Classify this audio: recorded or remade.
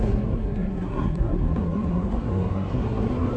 remade